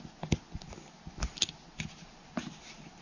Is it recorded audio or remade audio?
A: recorded